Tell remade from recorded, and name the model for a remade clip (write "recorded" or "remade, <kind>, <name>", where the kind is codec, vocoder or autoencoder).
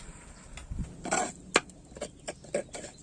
recorded